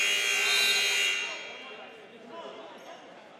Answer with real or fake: real